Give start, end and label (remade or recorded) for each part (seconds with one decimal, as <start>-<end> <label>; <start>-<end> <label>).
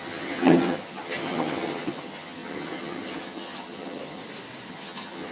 0.0-4.2 remade; 4.2-4.7 recorded; 4.7-5.3 remade